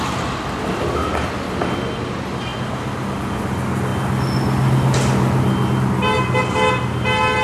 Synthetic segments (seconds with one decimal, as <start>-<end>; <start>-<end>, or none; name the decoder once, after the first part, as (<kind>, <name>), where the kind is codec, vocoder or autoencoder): none

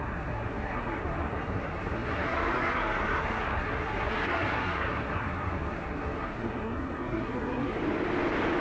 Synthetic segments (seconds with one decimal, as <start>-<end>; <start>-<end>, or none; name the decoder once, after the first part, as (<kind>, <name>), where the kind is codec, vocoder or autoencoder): 0.0-7.8 (codec, SNAC)

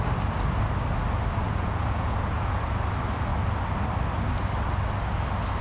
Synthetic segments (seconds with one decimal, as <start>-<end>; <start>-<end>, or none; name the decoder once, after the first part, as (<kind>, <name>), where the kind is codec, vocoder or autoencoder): 1.4-2.6 (vocoder, Vocos)

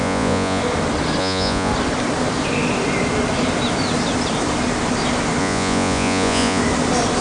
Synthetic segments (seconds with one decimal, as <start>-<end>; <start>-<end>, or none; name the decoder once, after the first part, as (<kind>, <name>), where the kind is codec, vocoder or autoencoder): 0.0-0.6 (vocoder, Vocos); 1.2-1.7; 5.4-6.6

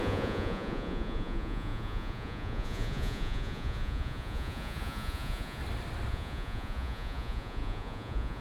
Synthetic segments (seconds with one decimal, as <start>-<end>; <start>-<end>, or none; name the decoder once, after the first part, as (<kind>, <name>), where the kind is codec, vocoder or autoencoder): 0.0-5.6 (vocoder, Vocos); 6.1-8.4

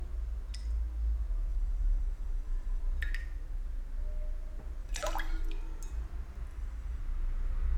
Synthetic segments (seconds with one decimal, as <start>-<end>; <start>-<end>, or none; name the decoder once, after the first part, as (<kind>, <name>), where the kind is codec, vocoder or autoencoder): 1.5-2.8 (vocoder, BigVGAN v2); 4.8-5.5; 6.5-7.0

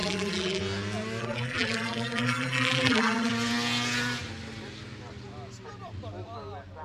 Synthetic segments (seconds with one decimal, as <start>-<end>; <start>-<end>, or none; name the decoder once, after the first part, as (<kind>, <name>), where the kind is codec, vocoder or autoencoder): 0.0-0.6 (vocoder, BigVGAN v2); 1.2-3.3

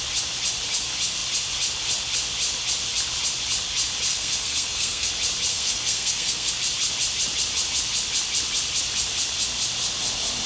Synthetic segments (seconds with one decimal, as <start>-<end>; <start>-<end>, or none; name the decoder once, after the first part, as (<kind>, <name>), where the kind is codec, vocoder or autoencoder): 4.1-5.1 (codec, SNAC); 5.5-6.5